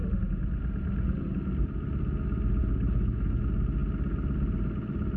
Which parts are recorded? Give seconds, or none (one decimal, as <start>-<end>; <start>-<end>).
0.0-2.6; 3.4-5.2